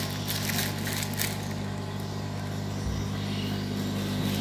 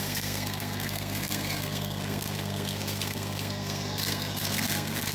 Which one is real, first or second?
first